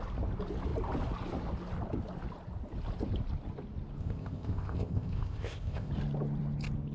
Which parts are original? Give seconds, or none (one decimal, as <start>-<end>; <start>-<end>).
0.0-4.0; 5.9-6.9